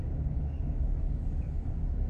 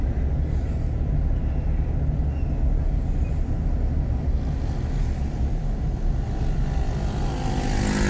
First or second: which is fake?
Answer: first